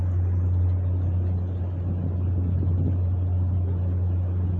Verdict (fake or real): real